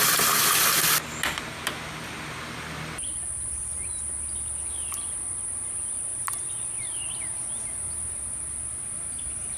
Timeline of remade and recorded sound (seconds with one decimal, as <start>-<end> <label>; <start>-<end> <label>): 0.0-9.6 recorded